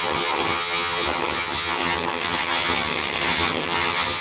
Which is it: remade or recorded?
remade